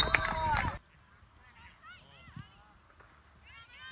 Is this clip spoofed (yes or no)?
no